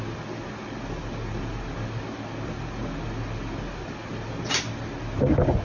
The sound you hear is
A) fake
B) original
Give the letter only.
B